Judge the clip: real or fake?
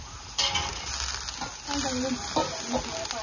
real